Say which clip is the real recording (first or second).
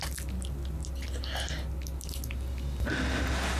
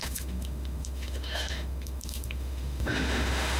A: first